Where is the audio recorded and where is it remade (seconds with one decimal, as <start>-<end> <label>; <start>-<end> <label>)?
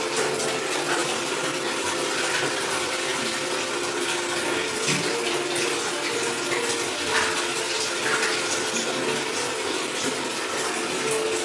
0.0-1.0 recorded; 1.0-2.4 remade; 2.4-3.1 recorded; 3.1-5.1 remade; 5.1-11.4 recorded